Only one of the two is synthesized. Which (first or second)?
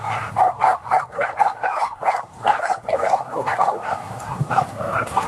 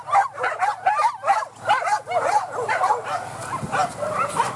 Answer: first